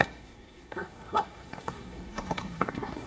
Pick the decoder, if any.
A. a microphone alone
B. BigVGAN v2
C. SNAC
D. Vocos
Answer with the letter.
C